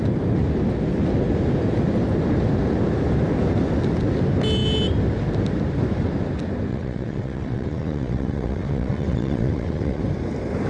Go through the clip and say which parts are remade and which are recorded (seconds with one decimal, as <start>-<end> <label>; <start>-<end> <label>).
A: 0.0-6.7 recorded; 6.7-10.0 remade; 10.0-10.7 recorded